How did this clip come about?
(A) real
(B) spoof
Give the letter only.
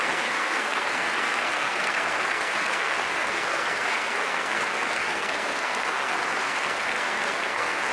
B